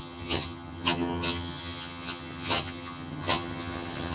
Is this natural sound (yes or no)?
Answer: no